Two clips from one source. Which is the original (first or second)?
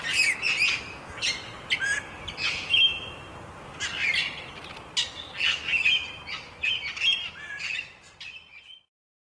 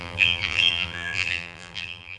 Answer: first